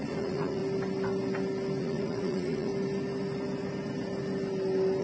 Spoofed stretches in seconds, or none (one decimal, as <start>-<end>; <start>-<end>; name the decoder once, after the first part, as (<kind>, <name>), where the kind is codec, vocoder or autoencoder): 0.0-0.6 (vocoder, Vocos); 1.8-2.7